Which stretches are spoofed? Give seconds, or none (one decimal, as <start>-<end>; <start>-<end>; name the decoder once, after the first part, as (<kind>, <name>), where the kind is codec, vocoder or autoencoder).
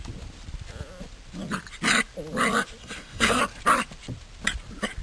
2.8-3.4 (codec, SNAC)